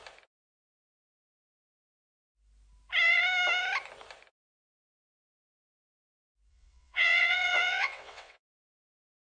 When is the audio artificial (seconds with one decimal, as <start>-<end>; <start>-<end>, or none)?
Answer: 6.5-8.6